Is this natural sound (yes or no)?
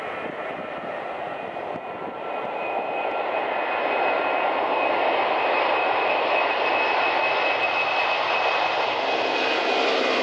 no